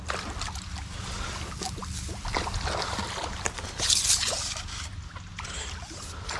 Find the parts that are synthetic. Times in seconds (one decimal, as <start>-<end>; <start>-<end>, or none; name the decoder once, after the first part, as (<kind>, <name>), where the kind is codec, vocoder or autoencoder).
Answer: none